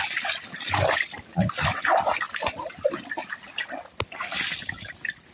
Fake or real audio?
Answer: real